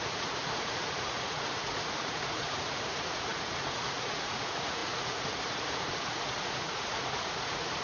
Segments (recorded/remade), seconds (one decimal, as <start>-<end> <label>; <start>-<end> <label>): 0.0-7.8 remade